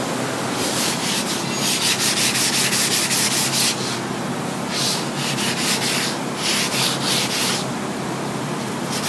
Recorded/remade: recorded